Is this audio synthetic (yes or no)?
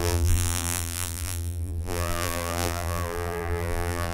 yes